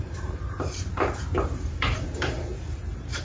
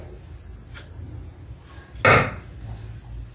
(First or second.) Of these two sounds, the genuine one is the second